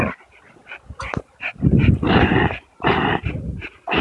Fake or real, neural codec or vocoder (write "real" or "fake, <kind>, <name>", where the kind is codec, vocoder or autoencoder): real